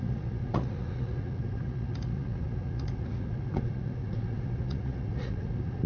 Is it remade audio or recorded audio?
remade